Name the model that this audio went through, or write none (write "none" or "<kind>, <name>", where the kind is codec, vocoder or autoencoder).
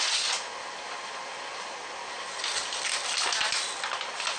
none